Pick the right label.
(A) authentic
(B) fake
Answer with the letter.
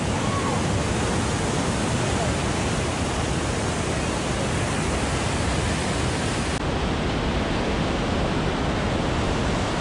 A